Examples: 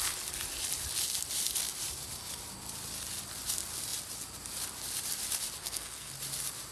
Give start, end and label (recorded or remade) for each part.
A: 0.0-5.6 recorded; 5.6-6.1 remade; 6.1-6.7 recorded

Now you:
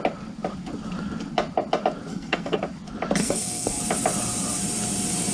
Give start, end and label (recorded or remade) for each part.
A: 0.0-2.1 recorded; 2.1-2.6 remade; 2.6-3.2 recorded; 3.2-3.8 remade; 3.8-5.3 recorded

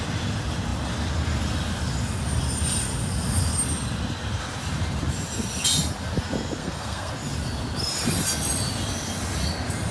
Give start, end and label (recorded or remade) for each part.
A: 0.0-6.6 recorded; 6.6-7.1 remade; 7.1-9.9 recorded

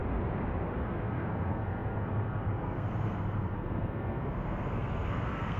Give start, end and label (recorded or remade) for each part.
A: 0.0-0.7 recorded; 0.7-5.6 remade

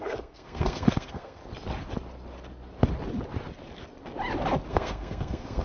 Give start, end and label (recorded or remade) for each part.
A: 0.0-1.4 remade; 1.4-4.7 recorded; 4.7-5.6 remade

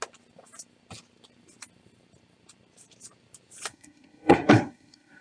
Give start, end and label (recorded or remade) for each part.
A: 0.0-3.7 recorded; 3.7-5.2 remade

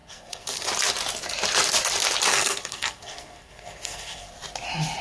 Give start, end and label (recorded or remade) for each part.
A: 0.0-0.7 remade; 0.7-2.3 recorded; 2.3-4.3 remade; 4.3-5.0 recorded